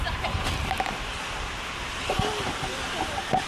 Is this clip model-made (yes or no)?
no